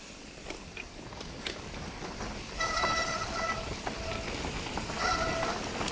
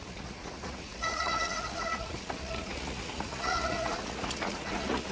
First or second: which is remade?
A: second